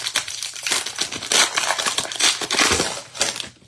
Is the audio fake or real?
real